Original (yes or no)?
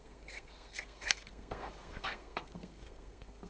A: no